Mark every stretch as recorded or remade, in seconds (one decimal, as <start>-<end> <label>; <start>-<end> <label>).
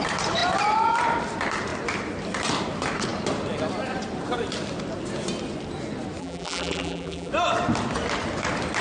0.0-6.2 recorded; 6.2-7.3 remade; 7.3-8.8 recorded